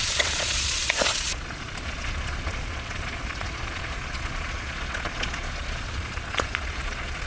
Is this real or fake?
fake